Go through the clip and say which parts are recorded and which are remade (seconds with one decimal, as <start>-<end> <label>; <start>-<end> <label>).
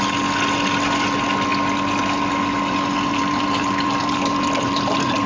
0.0-3.1 recorded; 3.1-5.3 remade